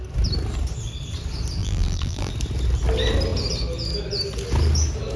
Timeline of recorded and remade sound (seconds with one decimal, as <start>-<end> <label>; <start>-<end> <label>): 0.0-1.6 recorded; 1.6-2.3 remade; 2.3-5.2 recorded